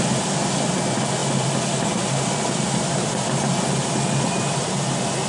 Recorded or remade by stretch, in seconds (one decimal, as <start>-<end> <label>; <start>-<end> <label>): 0.0-5.3 recorded